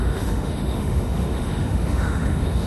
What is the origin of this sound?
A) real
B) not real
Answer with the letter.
B